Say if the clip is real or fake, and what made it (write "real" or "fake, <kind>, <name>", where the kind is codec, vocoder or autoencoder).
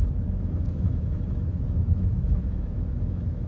fake, autoencoder, DAC-VAE